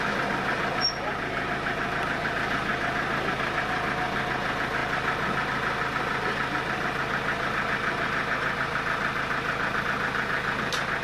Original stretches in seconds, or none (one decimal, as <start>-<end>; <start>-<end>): 0.0-11.0